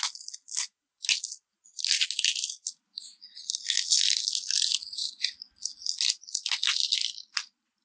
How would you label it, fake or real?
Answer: real